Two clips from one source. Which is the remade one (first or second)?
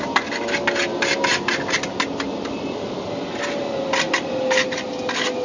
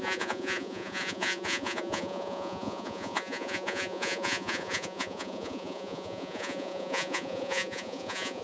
second